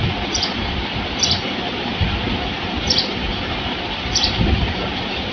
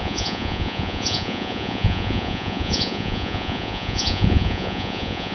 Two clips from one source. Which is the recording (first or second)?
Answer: first